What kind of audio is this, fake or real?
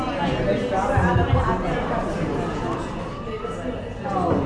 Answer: real